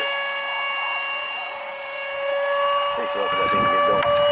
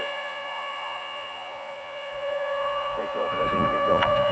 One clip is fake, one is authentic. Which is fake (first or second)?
second